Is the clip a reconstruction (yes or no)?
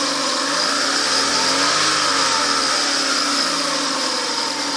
no